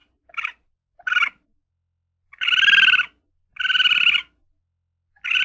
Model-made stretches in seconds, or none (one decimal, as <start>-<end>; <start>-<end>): 0.0-1.7